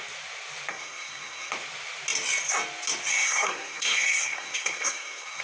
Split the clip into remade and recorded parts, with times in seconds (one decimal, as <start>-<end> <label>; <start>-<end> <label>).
0.0-0.7 recorded; 0.7-1.5 remade; 1.5-3.1 recorded; 3.1-5.4 remade